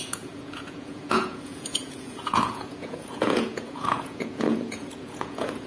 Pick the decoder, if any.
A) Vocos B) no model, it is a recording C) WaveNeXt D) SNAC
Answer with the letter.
A